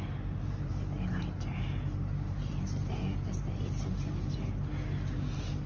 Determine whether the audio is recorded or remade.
recorded